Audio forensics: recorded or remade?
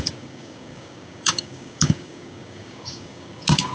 remade